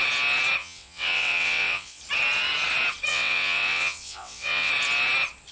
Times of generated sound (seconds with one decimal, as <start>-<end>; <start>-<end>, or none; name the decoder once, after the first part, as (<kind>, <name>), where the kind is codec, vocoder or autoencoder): 0.6-2.0 (vocoder, WaveNeXt); 3.1-4.7